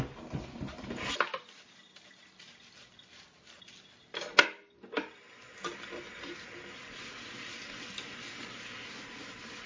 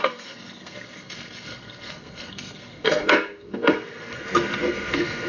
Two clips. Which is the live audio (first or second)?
first